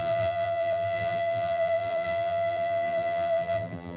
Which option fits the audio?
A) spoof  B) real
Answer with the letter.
A